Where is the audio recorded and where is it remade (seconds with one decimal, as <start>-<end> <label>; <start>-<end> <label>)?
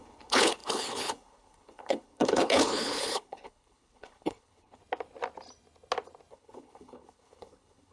0.0-4.8 remade; 4.8-6.3 recorded; 6.3-7.9 remade